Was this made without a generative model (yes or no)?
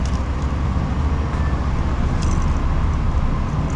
yes